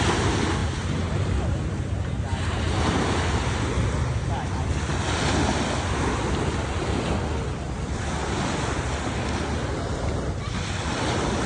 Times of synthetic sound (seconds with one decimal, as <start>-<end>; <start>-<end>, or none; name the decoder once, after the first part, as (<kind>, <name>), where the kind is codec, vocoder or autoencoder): 0.6-3.1 (vocoder, BigVGAN v2)